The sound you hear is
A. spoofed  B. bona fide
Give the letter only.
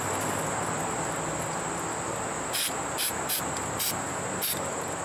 B